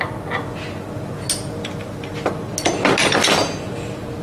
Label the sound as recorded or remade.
recorded